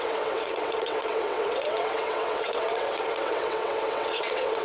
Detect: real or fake fake